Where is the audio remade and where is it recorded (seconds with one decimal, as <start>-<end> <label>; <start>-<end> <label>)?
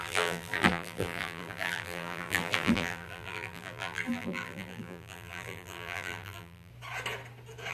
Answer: 0.0-6.7 remade; 6.7-7.7 recorded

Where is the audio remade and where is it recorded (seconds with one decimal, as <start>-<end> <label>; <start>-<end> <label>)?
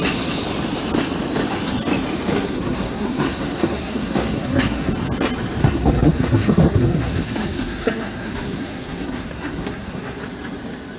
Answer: 0.0-2.3 recorded; 2.3-4.9 remade; 4.9-5.6 recorded; 5.6-10.2 remade; 10.2-11.0 recorded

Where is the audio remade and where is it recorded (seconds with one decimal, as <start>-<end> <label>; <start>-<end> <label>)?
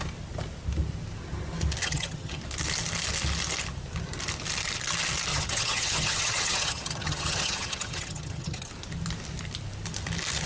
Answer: 0.0-1.8 recorded; 1.8-2.4 remade; 2.4-5.3 recorded; 5.3-8.7 remade; 8.7-10.5 recorded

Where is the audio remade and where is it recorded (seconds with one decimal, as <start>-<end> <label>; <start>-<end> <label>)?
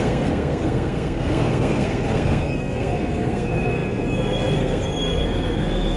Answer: 0.0-6.0 remade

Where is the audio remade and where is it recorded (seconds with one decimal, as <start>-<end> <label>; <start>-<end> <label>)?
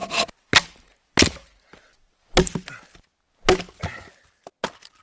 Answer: 0.0-5.0 recorded